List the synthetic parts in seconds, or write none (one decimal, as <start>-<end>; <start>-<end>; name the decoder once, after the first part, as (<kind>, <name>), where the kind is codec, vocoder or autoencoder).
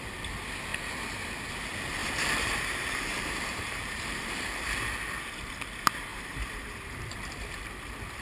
2.0-4.5 (vocoder, BigVGAN v2); 6.1-7.1